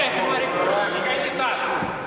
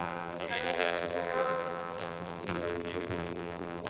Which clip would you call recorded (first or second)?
first